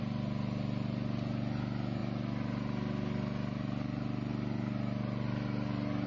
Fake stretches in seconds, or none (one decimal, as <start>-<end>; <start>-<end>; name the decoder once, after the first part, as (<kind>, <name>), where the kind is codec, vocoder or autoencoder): none